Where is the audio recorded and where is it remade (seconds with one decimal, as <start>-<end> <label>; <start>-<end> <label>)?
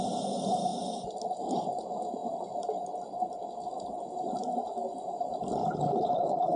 0.0-5.6 recorded; 5.6-6.6 remade